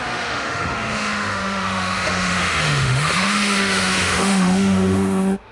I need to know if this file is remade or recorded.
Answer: remade